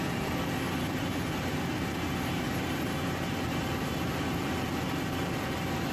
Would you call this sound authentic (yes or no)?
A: no